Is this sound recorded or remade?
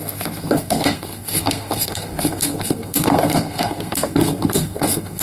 remade